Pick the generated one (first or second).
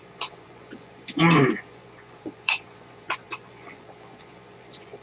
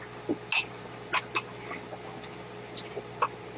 first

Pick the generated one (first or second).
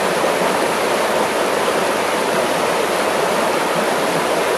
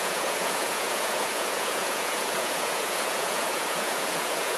second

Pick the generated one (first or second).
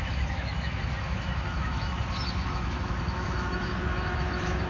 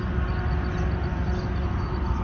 first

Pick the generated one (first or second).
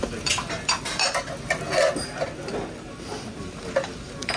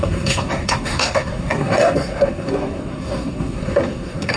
second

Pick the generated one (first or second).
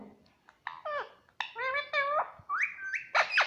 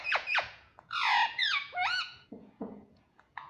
second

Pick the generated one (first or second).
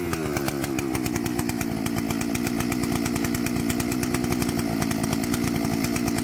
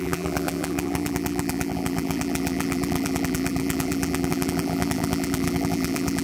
second